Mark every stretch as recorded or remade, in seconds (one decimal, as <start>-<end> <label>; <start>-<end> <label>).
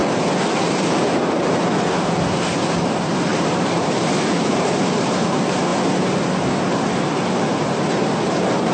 0.0-3.3 recorded; 3.3-4.8 remade; 4.8-8.7 recorded